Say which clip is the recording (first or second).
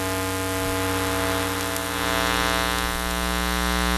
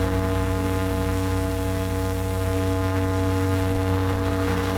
first